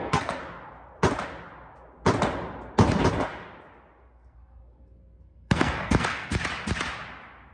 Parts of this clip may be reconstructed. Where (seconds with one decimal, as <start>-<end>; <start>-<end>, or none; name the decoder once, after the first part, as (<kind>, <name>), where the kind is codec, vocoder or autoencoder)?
0.0-0.4 (codec, SNAC); 4.0-6.3